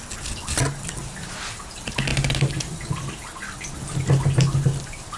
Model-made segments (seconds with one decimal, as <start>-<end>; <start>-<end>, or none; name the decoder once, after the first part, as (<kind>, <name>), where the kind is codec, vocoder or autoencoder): none